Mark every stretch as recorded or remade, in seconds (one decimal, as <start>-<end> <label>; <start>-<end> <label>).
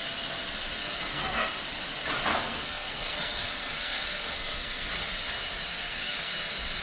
0.0-0.8 recorded; 0.8-1.5 remade; 1.5-2.3 recorded; 2.3-4.9 remade; 4.9-5.7 recorded; 5.7-6.3 remade; 6.3-6.8 recorded